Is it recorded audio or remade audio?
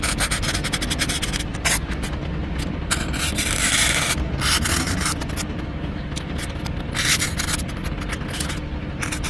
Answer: recorded